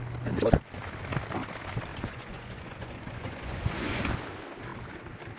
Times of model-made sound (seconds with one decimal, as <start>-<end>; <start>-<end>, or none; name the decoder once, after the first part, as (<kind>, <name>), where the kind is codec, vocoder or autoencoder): 1.9-4.0 (vocoder, Vocos)